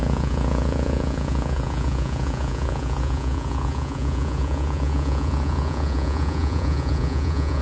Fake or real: fake